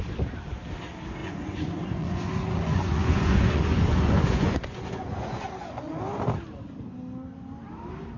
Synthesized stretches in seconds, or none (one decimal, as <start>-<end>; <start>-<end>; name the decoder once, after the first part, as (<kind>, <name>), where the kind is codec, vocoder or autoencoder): 1.2-6.0 (vocoder, Vocos)